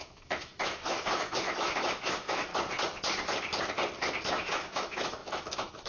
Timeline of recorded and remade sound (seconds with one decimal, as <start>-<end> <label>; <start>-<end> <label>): 0.0-2.5 remade; 2.5-4.2 recorded; 4.2-5.9 remade